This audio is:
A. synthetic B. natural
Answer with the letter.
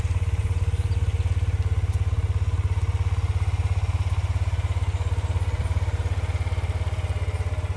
B